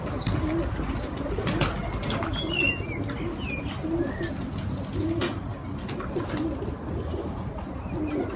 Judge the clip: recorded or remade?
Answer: recorded